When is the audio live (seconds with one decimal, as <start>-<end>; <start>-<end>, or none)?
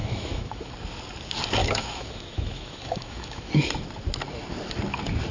0.7-1.6; 3.5-5.3